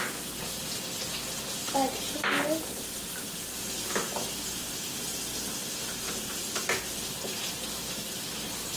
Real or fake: real